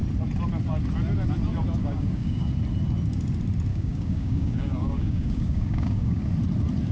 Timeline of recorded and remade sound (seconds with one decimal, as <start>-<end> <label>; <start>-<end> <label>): 0.0-1.8 recorded; 1.8-2.5 remade; 2.5-3.7 recorded; 3.7-6.2 remade; 6.2-6.9 recorded